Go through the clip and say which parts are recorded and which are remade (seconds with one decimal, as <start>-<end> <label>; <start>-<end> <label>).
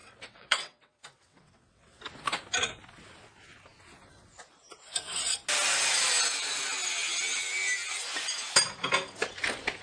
0.0-2.0 remade; 2.0-9.8 recorded